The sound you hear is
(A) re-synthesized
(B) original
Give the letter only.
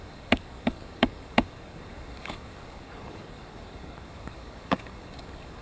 A